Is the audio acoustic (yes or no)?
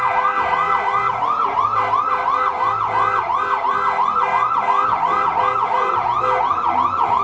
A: yes